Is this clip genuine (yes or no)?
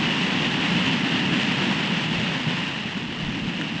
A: yes